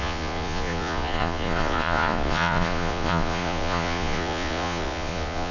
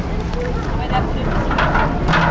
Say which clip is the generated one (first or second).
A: first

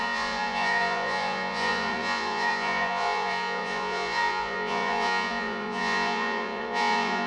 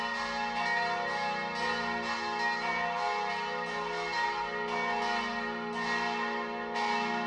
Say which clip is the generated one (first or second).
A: first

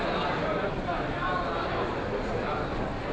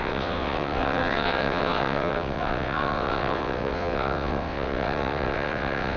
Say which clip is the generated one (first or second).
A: second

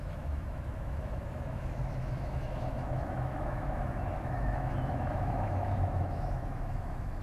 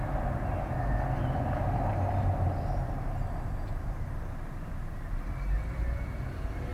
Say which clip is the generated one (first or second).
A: first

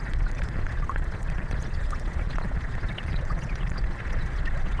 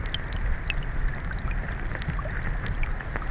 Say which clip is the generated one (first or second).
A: first